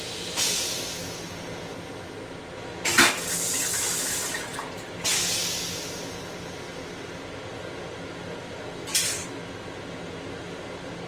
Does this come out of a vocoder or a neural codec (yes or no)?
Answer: no